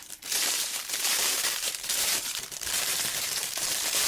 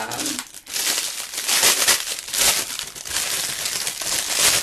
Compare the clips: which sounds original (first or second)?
second